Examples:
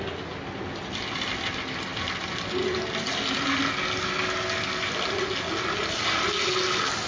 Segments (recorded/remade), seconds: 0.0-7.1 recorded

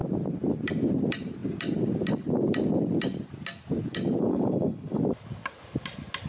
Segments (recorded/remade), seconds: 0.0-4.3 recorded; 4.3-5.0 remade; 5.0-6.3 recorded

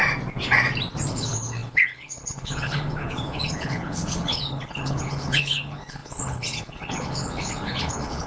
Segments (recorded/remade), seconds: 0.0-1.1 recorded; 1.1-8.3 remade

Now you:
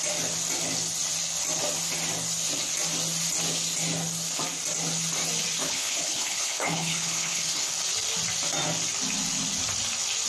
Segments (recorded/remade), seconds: 0.0-5.6 recorded; 5.6-7.7 remade; 7.7-10.3 recorded

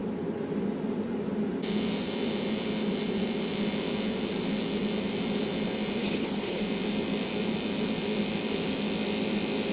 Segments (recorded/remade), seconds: 0.0-6.0 recorded; 6.0-6.6 remade; 6.6-9.7 recorded